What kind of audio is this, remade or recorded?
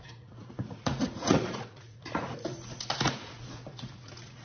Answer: remade